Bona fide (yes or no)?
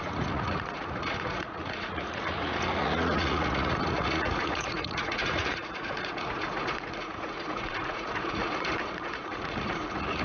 no